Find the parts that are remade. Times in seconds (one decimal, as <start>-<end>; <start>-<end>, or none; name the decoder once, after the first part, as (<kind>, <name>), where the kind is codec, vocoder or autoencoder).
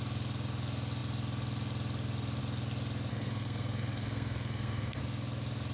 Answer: 3.1-5.0 (codec, SNAC)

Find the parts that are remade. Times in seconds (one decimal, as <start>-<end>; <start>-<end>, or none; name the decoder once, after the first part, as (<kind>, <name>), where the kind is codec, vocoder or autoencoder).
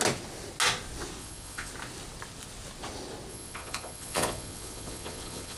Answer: 1.2-1.7 (vocoder, Vocos); 3.3-5.6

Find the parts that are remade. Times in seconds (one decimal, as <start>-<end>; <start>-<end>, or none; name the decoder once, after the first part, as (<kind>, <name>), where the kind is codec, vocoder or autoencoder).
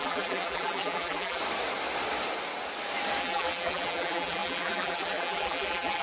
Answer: 0.0-1.4 (vocoder, BigVGAN v2); 3.2-6.0